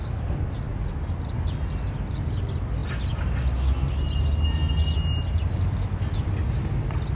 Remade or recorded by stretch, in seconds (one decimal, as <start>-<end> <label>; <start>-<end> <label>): 0.0-7.1 recorded